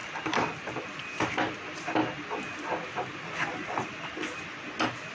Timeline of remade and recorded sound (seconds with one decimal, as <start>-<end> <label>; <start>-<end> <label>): 0.0-5.1 recorded